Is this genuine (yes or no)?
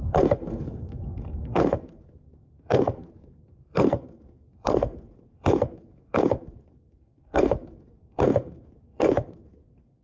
no